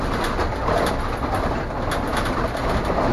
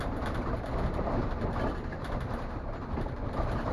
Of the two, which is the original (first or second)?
first